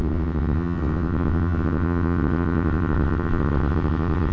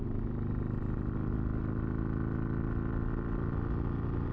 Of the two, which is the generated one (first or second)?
first